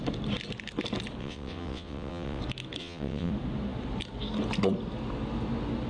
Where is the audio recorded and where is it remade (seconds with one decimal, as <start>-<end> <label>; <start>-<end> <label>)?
0.0-1.2 recorded; 1.2-2.4 remade; 2.4-2.8 recorded; 2.8-3.3 remade; 3.3-5.9 recorded